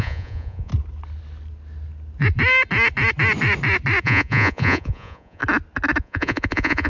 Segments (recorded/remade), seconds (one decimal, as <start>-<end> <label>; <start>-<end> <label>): 0.0-0.7 remade; 0.7-4.0 recorded; 4.0-5.4 remade; 5.4-6.0 recorded; 6.0-6.9 remade